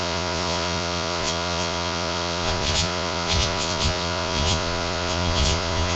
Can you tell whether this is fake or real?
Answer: fake